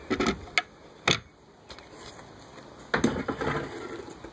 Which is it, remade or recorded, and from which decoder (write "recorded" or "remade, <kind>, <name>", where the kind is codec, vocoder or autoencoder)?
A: recorded